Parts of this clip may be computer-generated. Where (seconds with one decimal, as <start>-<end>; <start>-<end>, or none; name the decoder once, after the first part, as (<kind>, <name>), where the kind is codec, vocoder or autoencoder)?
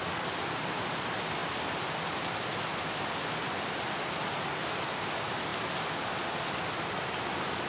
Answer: none